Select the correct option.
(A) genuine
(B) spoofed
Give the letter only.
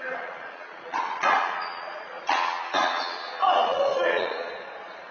B